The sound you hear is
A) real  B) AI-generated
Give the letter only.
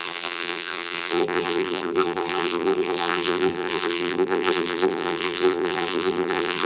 B